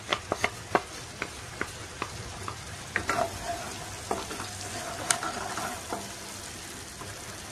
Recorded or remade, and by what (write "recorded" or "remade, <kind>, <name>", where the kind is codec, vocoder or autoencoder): recorded